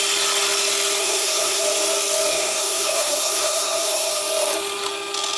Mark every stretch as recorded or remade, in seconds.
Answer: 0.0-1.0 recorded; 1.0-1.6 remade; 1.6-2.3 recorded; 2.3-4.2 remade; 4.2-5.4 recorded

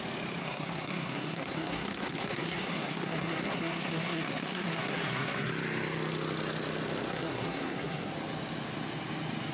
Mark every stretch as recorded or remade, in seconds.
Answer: 0.0-0.4 recorded; 0.4-5.5 remade; 5.5-7.1 recorded; 7.1-8.1 remade; 8.1-9.5 recorded

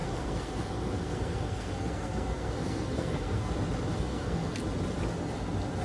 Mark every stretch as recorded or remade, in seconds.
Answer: 0.0-3.5 remade; 3.5-3.9 recorded; 3.9-4.6 remade; 4.6-5.8 recorded

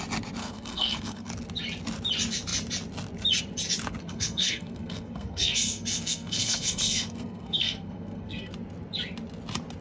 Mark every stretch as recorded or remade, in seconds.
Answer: 0.0-0.4 recorded; 0.4-1.3 remade; 1.3-4.0 recorded; 4.0-8.5 remade; 8.5-9.8 recorded

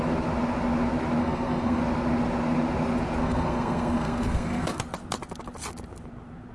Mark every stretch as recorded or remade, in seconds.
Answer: 0.0-1.2 recorded; 1.2-1.8 remade; 1.8-3.2 recorded; 3.2-4.8 remade; 4.8-6.5 recorded

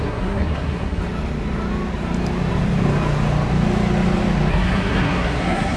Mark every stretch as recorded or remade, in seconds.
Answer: 0.0-1.0 remade; 1.0-4.5 recorded; 4.5-5.8 remade

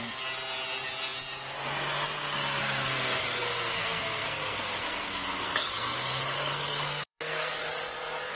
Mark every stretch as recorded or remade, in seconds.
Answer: 0.0-2.6 recorded; 2.6-7.5 remade; 7.5-8.4 recorded

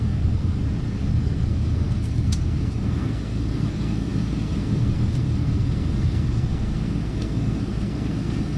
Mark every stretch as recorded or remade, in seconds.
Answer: 0.0-0.6 remade; 0.6-1.2 recorded; 1.2-8.6 remade